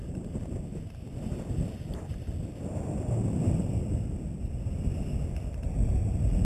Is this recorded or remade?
recorded